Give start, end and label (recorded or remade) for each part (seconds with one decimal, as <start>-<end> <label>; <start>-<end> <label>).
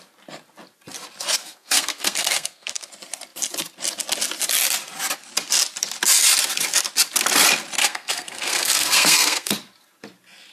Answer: 0.0-1.4 recorded; 1.4-2.9 remade; 2.9-7.8 recorded; 7.8-9.5 remade; 9.5-10.5 recorded